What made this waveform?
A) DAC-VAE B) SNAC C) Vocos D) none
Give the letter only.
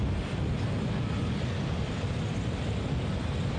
D